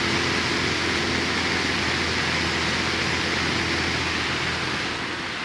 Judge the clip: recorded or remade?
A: recorded